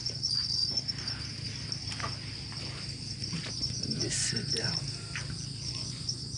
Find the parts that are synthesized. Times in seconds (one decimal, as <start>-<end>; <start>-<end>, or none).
0.0-0.6; 3.5-4.7; 5.7-6.4